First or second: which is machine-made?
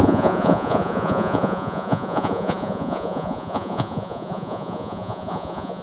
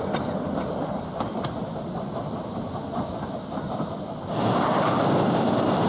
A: first